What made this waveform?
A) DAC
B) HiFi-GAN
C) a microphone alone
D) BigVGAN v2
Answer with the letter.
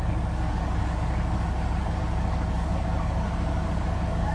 A